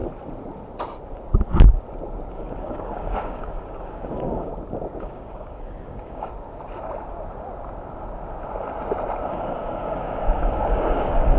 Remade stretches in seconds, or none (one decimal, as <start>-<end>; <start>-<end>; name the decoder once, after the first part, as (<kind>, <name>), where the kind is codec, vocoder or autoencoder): 2.3-4.5 (codec, DAC); 5.0-6.3; 9.3-11.4